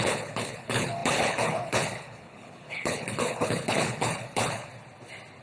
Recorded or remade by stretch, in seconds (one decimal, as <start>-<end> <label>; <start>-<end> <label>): 0.0-4.7 remade; 4.7-5.4 recorded